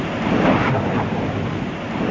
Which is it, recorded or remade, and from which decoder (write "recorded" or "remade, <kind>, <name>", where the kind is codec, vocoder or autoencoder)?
recorded